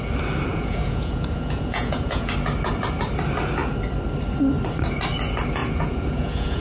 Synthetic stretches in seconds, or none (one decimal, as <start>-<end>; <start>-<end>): 0.5-2.3; 5.6-6.6